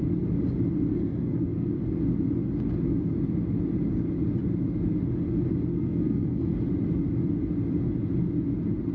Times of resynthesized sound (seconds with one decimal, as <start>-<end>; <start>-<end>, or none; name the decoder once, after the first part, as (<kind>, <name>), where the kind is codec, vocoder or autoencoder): 0.9-1.7 (codec, SNAC); 5.7-6.5